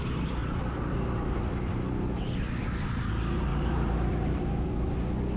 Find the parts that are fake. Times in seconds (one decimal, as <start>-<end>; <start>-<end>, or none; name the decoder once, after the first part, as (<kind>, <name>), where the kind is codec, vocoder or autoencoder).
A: 3.5-4.5 (vocoder, BigVGAN v2)